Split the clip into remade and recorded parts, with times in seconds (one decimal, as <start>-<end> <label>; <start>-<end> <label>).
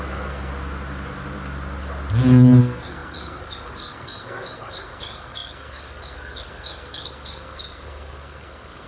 0.0-0.5 remade; 0.5-2.6 recorded; 2.6-8.9 remade